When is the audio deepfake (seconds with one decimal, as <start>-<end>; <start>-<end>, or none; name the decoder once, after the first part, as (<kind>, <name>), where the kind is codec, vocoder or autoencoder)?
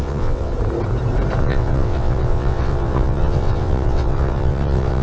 0.0-0.5 (vocoder, WaveNeXt); 1.4-5.0